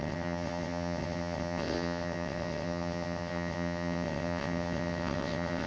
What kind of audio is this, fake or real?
fake